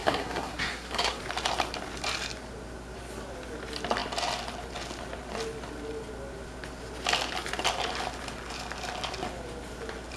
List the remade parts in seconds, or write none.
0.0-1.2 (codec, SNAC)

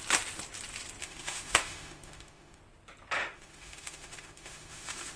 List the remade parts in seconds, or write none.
1.0-2.6 (autoencoder, DAC-VAE); 3.2-5.2

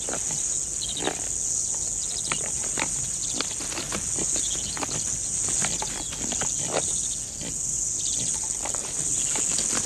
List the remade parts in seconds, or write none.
none

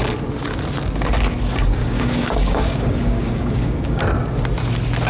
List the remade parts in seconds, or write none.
1.8-4.0 (codec, DAC)

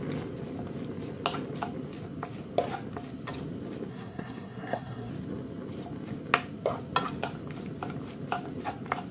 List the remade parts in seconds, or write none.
3.9-5.1 (codec, SNAC)

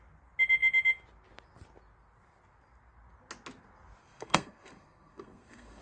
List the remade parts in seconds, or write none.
4.0-5.8 (codec, SNAC)

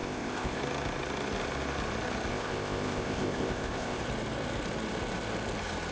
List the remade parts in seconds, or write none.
0.0-0.6 (codec, ZipCodec); 2.3-4.0

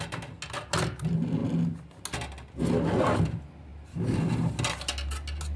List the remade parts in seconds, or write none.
none